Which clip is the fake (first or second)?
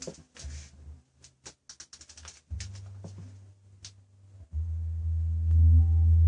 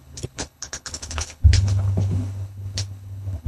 second